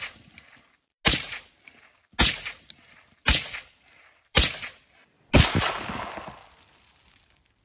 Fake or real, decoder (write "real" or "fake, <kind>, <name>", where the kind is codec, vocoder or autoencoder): real